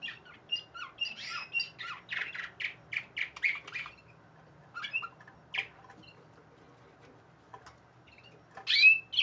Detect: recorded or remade recorded